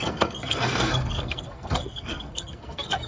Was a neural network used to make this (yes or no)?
yes